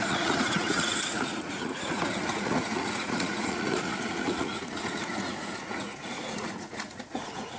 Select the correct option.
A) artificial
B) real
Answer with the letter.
A